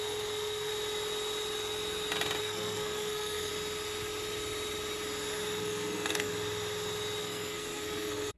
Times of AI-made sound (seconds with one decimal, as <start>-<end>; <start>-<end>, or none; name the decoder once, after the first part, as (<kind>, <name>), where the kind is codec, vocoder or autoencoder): 0.0-0.7 (codec, SNAC); 2.4-3.5; 5.6-6.3; 7.2-8.4